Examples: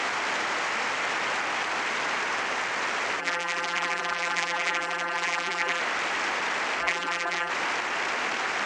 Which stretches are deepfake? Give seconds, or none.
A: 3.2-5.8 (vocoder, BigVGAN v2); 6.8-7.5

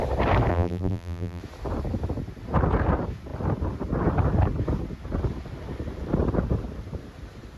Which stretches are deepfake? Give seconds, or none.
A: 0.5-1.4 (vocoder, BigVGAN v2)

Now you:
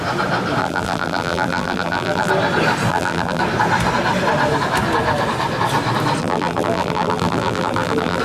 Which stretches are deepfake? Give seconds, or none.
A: 0.6-2.3 (vocoder, BigVGAN v2); 2.9-3.4; 6.2-8.2

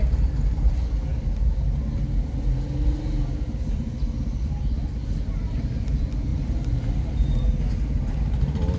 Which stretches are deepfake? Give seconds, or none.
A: 6.3-7.3 (vocoder, BigVGAN v2)